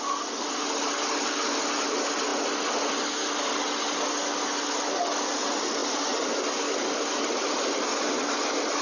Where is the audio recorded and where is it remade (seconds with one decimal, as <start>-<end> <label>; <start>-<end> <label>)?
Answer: 0.0-8.8 recorded